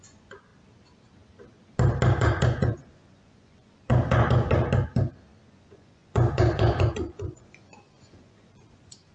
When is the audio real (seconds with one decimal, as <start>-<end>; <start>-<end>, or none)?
0.5-2.2; 4.6-5.5